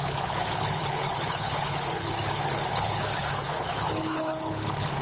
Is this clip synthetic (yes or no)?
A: yes